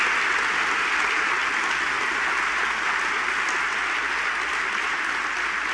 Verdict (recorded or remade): recorded